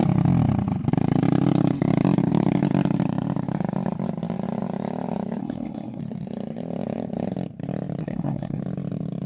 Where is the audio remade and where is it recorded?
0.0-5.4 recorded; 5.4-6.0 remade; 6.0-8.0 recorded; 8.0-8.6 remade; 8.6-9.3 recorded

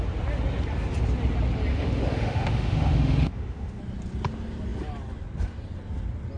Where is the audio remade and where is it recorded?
0.0-1.7 recorded; 1.7-3.8 remade; 3.8-6.4 recorded

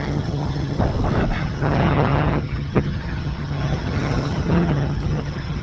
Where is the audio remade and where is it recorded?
0.0-0.8 remade; 0.8-1.4 recorded; 1.4-5.6 remade

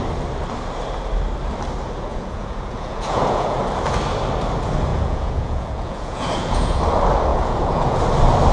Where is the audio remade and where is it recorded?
0.0-2.1 recorded; 2.1-3.6 remade; 3.6-4.9 recorded; 4.9-6.8 remade; 6.8-7.3 recorded; 7.3-8.0 remade; 8.0-8.5 recorded

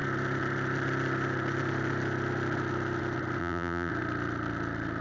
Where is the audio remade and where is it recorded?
0.0-3.4 recorded; 3.4-3.9 remade; 3.9-5.0 recorded

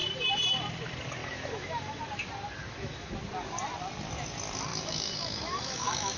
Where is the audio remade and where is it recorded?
0.0-1.2 recorded; 1.2-2.0 remade; 2.0-2.6 recorded; 2.6-3.1 remade; 3.1-4.7 recorded; 4.7-6.2 remade

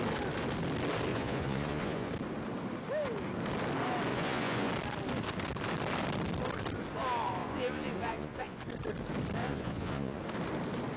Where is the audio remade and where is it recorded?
0.0-1.1 recorded; 1.1-2.1 remade; 2.1-4.1 recorded; 4.1-4.7 remade; 4.7-7.4 recorded; 7.4-8.6 remade; 8.6-9.4 recorded; 9.4-10.2 remade; 10.2-11.0 recorded